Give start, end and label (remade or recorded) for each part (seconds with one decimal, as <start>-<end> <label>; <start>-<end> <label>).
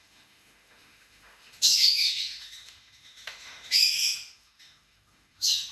0.0-5.7 remade